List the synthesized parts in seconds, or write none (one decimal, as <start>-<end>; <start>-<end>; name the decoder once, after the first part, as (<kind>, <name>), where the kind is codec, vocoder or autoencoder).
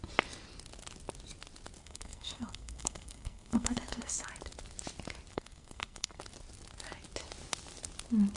1.8-4.3 (codec, SNAC); 5.3-6.2